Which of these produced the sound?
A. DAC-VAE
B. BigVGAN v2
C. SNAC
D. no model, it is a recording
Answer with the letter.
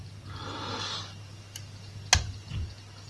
D